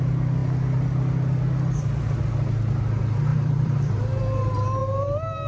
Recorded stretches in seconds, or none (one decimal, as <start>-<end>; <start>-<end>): 0.0-3.3; 4.2-4.8